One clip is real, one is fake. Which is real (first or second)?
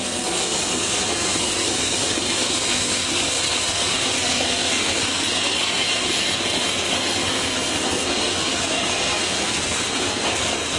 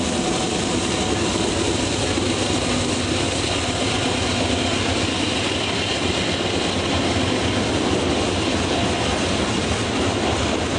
second